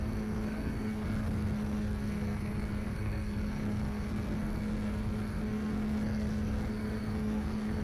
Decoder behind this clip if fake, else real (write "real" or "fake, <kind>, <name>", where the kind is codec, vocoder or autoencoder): fake, codec, SNAC